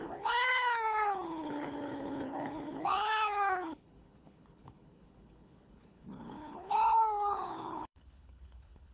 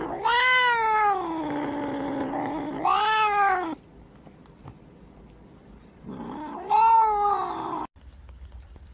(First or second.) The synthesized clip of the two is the first